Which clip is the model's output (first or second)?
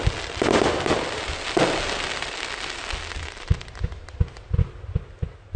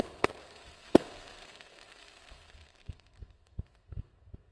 second